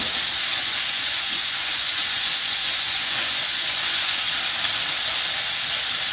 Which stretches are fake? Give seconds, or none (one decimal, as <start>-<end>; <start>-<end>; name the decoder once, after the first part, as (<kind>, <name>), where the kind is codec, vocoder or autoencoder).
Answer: 0.5-4.2 (vocoder, Vocos)